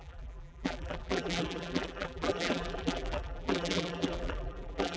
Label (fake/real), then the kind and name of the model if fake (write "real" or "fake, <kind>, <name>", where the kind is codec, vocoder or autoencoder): fake, vocoder, BigVGAN v2